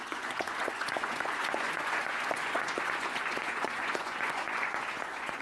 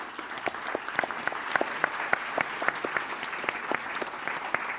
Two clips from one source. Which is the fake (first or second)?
first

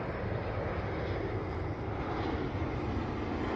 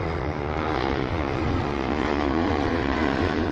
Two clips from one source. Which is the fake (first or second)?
second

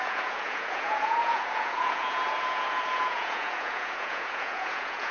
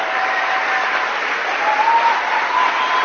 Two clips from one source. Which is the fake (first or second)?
first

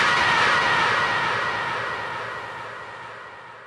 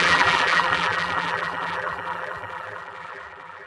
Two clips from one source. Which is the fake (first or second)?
second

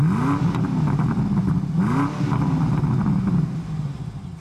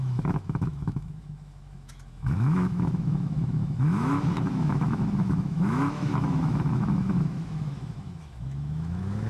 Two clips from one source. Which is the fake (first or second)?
second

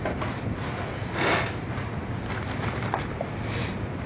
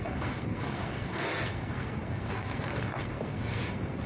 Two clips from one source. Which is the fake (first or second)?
second